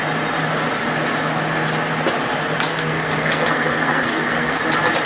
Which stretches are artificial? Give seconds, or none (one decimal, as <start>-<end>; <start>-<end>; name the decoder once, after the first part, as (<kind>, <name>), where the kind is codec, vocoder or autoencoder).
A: 2.7-4.6 (codec, SNAC)